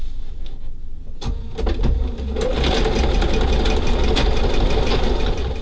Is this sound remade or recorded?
recorded